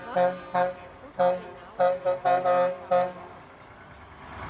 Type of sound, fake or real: real